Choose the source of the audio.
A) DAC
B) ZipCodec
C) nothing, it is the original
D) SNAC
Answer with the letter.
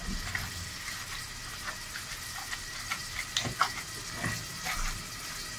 C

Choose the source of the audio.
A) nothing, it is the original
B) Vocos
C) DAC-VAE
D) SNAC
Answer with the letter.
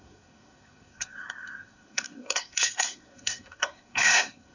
D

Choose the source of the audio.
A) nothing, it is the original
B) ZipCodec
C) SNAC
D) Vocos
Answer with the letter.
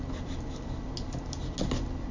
A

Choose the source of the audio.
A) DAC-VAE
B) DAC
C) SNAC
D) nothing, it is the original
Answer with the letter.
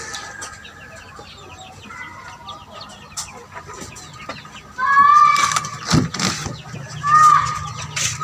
D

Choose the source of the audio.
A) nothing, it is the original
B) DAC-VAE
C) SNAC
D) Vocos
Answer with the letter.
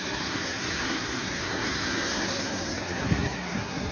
C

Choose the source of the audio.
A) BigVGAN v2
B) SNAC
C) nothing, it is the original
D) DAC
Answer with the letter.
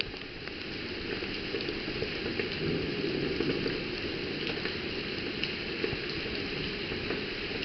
C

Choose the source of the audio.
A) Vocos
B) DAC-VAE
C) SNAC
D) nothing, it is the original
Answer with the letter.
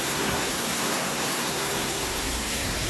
C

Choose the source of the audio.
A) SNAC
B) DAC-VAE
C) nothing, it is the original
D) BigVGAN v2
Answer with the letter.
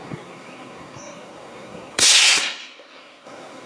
A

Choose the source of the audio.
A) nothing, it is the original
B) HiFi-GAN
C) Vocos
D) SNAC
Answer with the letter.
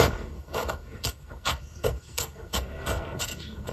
D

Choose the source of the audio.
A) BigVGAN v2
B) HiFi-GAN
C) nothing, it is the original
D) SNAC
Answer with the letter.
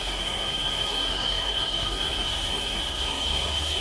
D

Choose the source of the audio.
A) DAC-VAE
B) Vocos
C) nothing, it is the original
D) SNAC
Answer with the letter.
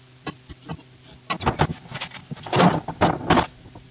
C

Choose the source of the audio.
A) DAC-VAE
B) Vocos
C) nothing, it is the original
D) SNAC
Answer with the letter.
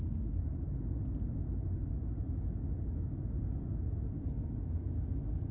C